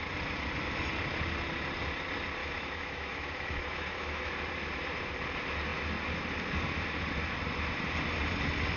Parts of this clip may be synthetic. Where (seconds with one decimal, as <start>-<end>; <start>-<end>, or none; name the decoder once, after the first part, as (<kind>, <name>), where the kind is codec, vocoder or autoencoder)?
2.4-4.3 (autoencoder, DAC-VAE)